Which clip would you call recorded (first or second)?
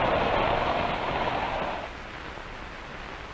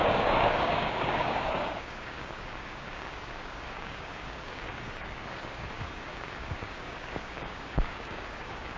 first